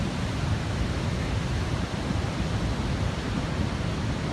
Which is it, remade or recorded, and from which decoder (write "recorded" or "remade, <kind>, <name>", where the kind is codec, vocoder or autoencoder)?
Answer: recorded